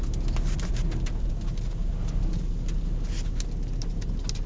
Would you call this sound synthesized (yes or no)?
no